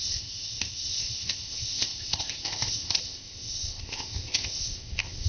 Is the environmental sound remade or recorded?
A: remade